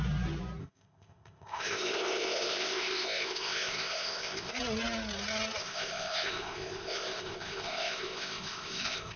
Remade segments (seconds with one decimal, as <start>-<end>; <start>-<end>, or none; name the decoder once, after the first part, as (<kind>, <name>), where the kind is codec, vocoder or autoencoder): 0.6-4.6 (codec, ZipCodec); 5.6-9.2